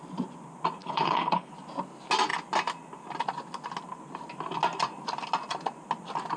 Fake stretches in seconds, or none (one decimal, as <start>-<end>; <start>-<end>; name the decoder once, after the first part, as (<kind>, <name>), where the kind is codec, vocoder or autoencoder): 0.8-1.5 (codec, HILCodec)